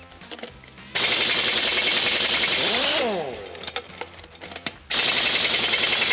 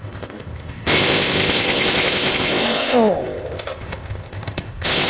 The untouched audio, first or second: first